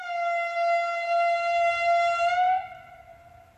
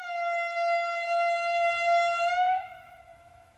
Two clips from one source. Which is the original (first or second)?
first